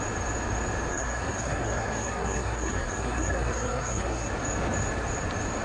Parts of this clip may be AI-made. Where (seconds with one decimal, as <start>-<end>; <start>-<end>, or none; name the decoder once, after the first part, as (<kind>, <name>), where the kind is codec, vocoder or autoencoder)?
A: 0.9-4.3 (codec, SNAC)